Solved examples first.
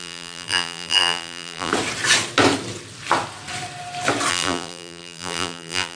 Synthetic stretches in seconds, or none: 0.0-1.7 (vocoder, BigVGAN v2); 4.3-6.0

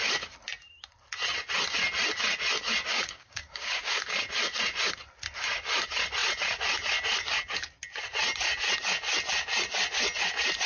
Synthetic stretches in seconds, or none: 2.9-4.0 (codec, DAC)